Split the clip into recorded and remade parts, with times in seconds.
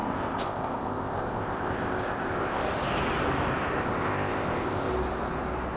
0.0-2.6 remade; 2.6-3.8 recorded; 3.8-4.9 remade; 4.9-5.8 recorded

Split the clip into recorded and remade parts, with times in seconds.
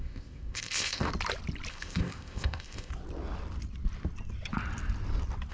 0.0-1.1 remade; 1.1-1.7 recorded; 1.7-2.9 remade; 2.9-5.5 recorded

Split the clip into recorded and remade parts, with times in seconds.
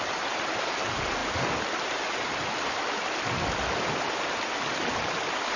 0.0-5.6 recorded